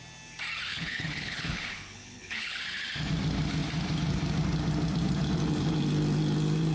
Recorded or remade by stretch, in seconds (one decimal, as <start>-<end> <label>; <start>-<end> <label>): 0.0-0.7 recorded; 0.7-2.6 remade; 2.6-6.7 recorded